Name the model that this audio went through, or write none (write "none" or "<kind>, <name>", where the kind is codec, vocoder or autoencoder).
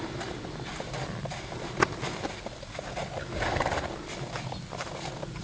none